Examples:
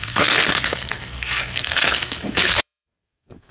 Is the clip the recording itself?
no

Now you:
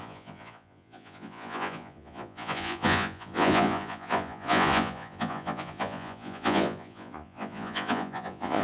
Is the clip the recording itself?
no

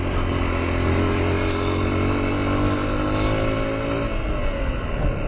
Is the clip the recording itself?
yes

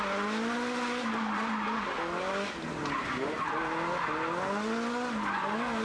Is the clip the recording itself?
yes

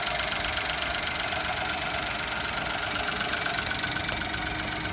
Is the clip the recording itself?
yes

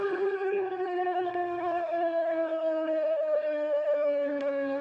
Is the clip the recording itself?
no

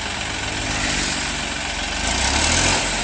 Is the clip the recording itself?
yes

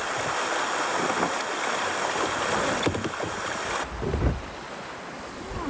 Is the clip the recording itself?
yes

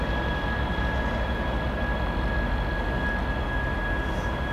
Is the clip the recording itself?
yes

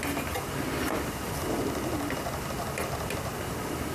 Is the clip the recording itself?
yes